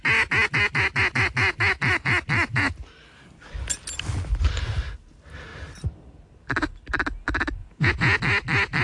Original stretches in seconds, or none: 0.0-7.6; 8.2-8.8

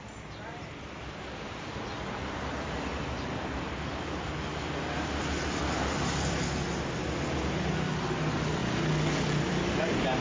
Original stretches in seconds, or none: 0.0-10.2

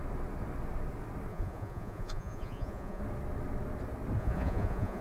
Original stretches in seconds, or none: 0.0-1.3; 3.0-4.2